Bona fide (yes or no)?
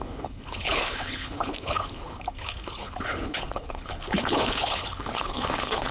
no